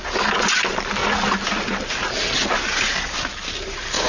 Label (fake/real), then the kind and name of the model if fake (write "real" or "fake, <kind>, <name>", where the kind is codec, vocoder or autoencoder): real